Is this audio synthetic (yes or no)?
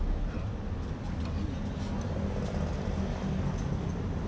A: no